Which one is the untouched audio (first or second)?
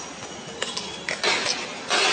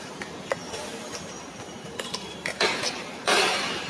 first